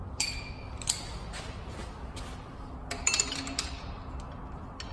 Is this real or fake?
real